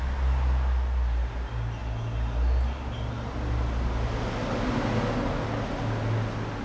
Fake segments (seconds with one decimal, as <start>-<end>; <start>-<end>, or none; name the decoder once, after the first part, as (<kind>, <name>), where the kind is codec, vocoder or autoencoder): none